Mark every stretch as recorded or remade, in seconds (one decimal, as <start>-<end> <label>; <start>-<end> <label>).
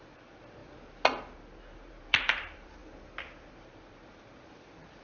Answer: 0.0-0.6 remade; 0.6-1.6 recorded; 1.6-2.8 remade; 2.8-3.5 recorded; 3.5-5.0 remade